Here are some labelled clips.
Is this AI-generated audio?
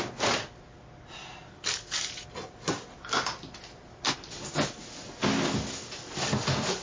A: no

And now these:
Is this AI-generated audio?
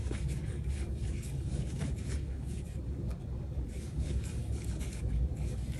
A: yes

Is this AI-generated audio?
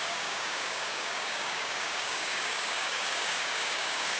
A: yes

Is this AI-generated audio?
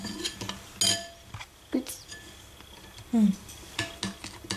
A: no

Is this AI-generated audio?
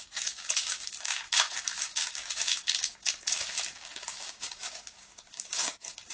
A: yes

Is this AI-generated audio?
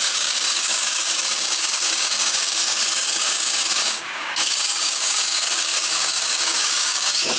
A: yes